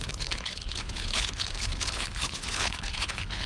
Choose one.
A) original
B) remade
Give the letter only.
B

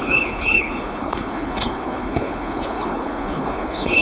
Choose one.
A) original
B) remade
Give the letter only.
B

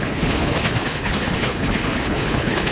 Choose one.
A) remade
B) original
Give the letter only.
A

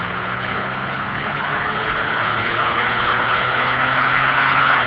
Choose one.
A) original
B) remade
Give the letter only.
B